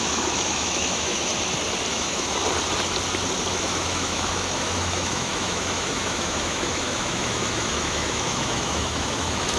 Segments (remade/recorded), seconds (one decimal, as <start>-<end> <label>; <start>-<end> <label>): 0.0-1.3 remade; 1.3-1.9 recorded; 1.9-2.4 remade; 2.4-3.5 recorded; 3.5-9.6 remade